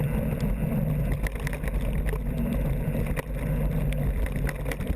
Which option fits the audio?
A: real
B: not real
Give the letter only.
A